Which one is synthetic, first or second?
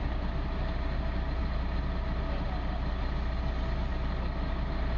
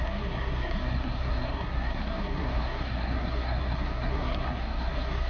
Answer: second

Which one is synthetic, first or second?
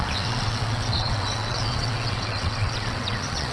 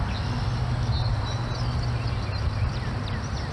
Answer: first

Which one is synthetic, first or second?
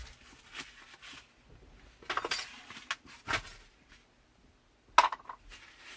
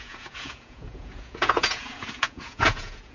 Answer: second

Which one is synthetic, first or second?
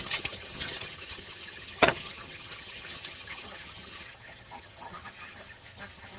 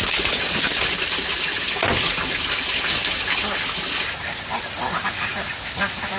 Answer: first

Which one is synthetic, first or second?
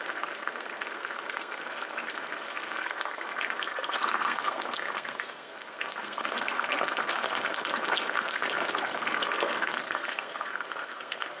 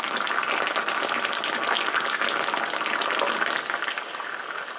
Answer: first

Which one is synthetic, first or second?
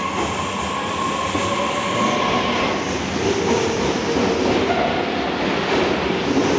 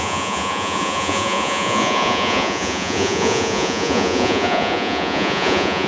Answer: second